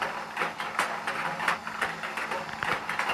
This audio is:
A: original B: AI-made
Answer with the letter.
A